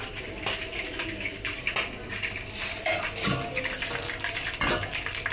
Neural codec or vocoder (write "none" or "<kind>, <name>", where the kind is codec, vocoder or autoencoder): none